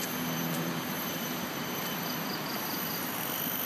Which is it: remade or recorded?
remade